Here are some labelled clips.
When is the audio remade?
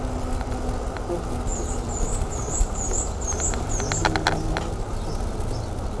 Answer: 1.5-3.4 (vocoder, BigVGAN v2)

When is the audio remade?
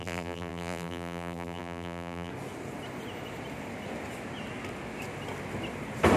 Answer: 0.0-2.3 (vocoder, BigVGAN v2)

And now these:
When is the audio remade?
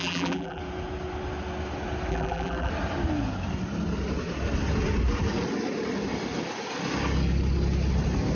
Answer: 0.0-0.6 (vocoder, BigVGAN v2); 2.1-2.7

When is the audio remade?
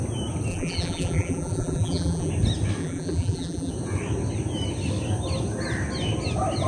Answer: 0.5-2.3 (vocoder, BigVGAN v2); 2.8-3.7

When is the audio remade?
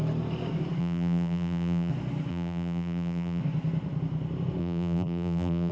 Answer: 0.8-1.9 (vocoder, BigVGAN v2); 2.3-3.4; 4.6-5.7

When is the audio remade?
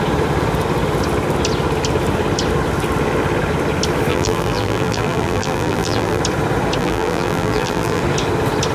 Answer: 4.1-6.2 (vocoder, BigVGAN v2); 6.8-8.0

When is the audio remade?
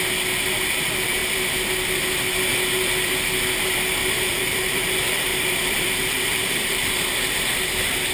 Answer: 1.2-2.1 (vocoder, BigVGAN v2); 2.5-3.1; 4.0-7.1